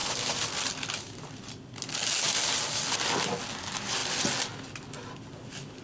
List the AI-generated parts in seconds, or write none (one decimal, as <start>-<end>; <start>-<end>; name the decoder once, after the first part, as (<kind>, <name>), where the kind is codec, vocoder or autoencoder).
none